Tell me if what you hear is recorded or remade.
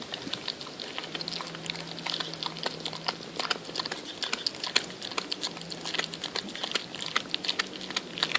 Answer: recorded